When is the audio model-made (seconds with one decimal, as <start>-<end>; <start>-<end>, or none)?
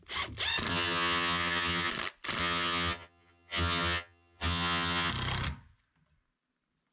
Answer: 0.7-1.9; 2.4-5.1